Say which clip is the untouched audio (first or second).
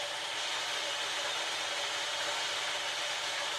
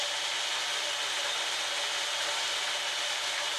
second